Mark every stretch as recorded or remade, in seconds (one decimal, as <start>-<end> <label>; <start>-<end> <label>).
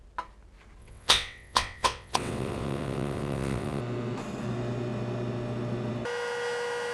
0.0-0.8 recorded; 0.8-3.8 remade; 3.8-6.9 recorded